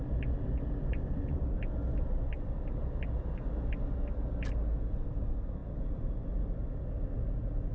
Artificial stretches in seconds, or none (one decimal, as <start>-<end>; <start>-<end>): 0.8-1.4